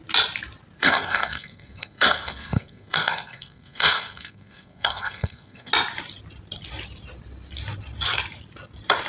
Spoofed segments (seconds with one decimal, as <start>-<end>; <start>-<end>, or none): 0.8-5.7